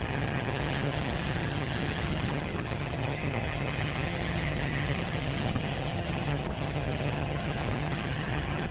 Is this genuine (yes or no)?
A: no